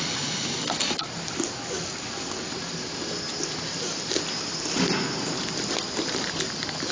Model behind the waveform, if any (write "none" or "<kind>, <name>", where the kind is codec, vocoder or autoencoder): none